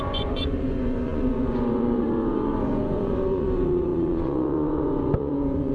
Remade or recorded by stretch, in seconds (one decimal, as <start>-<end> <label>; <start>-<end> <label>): 0.0-5.7 remade